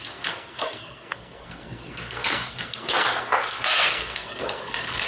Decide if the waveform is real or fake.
fake